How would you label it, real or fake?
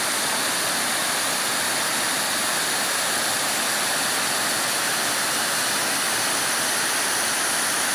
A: real